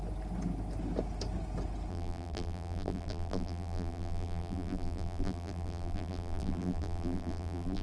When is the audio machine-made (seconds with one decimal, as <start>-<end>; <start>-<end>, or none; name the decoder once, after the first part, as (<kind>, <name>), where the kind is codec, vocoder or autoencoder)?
1.9-7.8 (vocoder, BigVGAN v2)